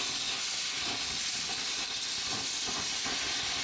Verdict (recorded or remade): recorded